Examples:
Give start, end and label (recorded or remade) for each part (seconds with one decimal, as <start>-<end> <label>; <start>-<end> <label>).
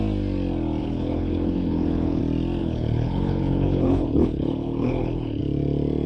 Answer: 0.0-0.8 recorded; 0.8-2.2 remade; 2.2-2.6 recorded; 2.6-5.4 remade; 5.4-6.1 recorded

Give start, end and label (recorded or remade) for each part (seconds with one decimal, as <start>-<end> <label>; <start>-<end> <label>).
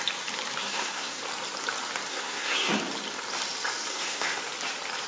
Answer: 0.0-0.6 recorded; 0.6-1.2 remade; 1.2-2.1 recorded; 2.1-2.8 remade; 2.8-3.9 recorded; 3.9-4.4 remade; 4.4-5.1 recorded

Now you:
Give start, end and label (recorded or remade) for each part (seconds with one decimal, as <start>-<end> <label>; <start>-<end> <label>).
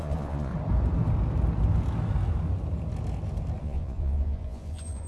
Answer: 0.0-0.5 remade; 0.5-3.6 recorded; 3.6-5.1 remade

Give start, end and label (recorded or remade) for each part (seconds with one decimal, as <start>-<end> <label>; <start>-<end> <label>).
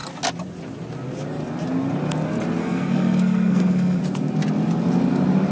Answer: 0.0-2.6 recorded; 2.6-4.0 remade; 4.0-5.5 recorded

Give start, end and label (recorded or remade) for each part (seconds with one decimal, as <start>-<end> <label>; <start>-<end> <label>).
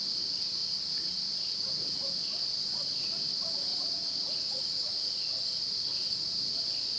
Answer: 0.0-0.6 recorded; 0.6-1.2 remade; 1.2-3.7 recorded; 3.7-5.2 remade; 5.2-5.9 recorded; 5.9-6.6 remade; 6.6-7.0 recorded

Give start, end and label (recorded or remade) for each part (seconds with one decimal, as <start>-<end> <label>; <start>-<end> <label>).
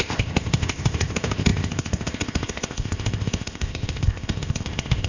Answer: 0.0-5.1 remade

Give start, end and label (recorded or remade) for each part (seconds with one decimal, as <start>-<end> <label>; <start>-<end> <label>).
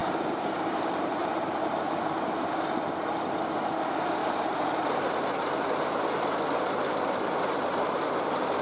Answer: 0.0-1.9 remade; 1.9-4.2 recorded; 4.2-5.1 remade; 5.1-8.6 recorded